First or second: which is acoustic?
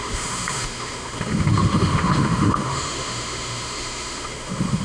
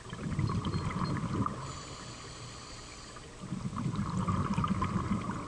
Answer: second